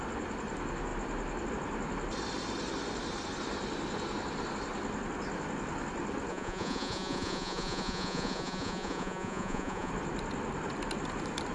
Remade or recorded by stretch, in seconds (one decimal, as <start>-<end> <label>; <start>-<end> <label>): 0.0-6.3 recorded; 6.3-9.9 remade; 9.9-11.5 recorded